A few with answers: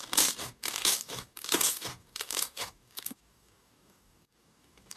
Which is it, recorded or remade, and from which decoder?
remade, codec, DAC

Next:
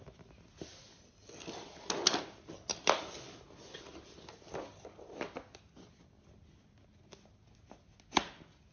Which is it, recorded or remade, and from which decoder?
recorded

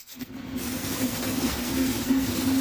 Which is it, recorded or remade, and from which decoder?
remade, codec, SNAC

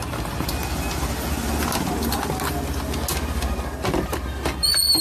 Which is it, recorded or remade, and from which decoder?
recorded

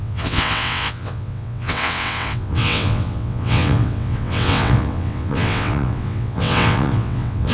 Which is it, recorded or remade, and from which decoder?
remade, vocoder, WaveNeXt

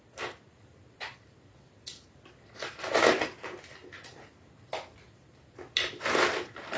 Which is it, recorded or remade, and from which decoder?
recorded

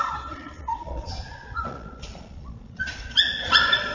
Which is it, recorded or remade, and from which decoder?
remade, vocoder, Vocos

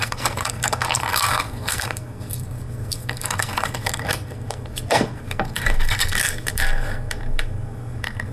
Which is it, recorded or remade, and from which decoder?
remade, codec, SNAC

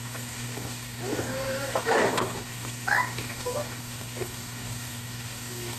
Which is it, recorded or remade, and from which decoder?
remade, codec, DAC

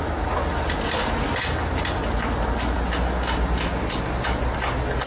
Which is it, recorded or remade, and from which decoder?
recorded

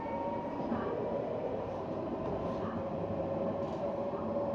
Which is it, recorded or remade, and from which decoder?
remade, vocoder, BigVGAN v2